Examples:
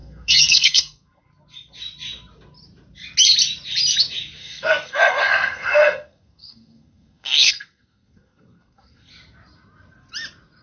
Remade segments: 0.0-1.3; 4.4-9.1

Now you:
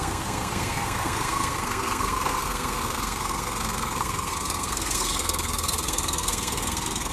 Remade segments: 0.0-7.1

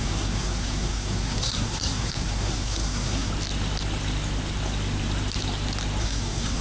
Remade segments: 0.0-3.3; 6.0-6.6

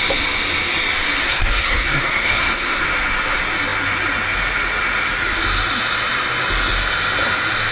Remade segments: 1.2-2.8

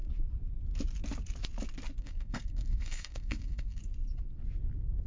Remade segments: 2.0-3.8